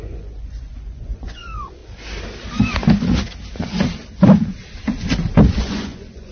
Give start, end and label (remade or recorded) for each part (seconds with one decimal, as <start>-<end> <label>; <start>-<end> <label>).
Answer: 0.0-1.8 remade; 1.8-5.6 recorded; 5.6-6.3 remade